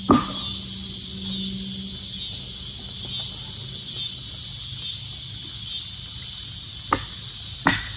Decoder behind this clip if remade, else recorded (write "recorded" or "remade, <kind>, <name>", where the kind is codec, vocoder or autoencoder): recorded